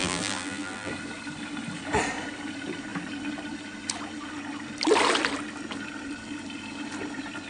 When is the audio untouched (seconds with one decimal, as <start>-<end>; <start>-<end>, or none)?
0.9-7.5